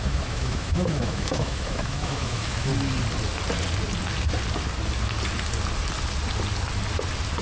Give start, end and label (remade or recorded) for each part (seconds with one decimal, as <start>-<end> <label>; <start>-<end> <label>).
0.0-2.7 remade; 2.7-7.4 recorded